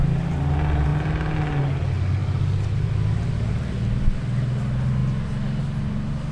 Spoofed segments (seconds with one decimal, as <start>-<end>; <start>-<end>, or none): none